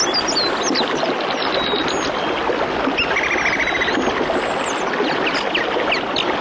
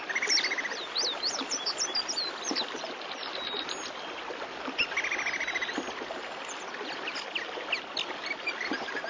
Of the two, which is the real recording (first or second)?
first